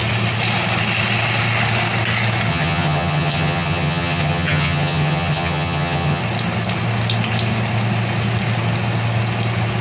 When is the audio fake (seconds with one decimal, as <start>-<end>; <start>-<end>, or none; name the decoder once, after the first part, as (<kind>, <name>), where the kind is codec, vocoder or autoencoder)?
2.5-6.2 (vocoder, HiFi-GAN)